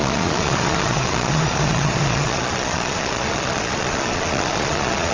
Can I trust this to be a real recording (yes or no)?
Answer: no